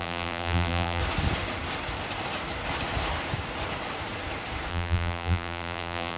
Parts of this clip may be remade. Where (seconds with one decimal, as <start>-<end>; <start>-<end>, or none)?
0.0-1.0; 4.7-6.2